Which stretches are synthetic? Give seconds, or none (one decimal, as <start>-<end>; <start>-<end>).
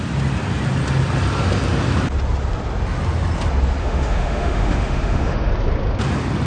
3.8-5.5